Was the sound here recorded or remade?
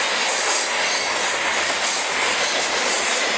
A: recorded